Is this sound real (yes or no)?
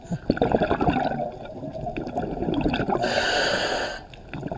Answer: yes